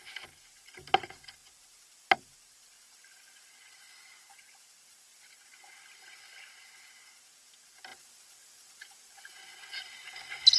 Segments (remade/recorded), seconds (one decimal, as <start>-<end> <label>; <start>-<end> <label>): 0.0-10.6 recorded

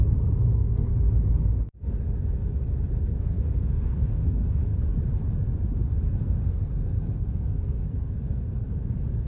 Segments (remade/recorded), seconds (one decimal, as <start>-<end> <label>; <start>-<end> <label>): 0.0-0.9 remade; 0.9-3.0 recorded; 3.0-4.7 remade; 4.7-6.2 recorded; 6.2-9.3 remade

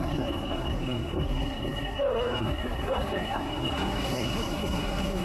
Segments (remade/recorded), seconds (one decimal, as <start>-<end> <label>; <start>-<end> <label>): 0.0-5.2 remade

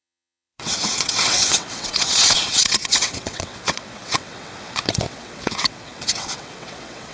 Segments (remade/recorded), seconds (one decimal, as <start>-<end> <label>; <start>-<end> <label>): 0.0-7.1 remade

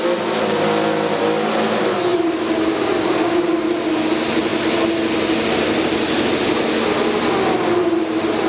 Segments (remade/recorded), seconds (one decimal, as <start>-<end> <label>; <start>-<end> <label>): 0.0-8.5 recorded